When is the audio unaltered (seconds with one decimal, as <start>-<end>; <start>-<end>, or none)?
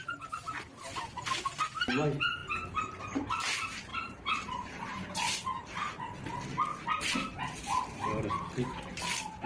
0.0-2.4; 3.3-3.9; 5.6-9.5